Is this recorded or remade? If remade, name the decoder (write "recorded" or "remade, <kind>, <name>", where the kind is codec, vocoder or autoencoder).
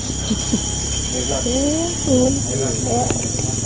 recorded